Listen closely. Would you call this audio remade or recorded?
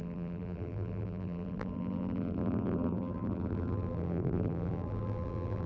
remade